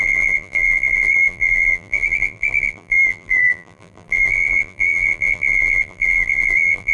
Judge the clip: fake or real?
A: fake